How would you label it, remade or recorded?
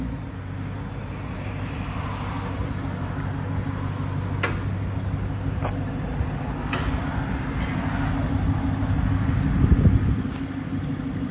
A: recorded